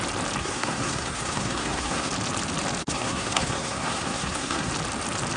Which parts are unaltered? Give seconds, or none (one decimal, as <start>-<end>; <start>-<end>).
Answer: 0.0-0.4; 2.1-2.8; 4.7-5.4